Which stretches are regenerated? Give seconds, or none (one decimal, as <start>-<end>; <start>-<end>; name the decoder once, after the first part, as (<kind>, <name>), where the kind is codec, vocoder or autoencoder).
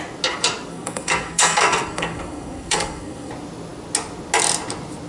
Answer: 0.7-3.3 (codec, SNAC)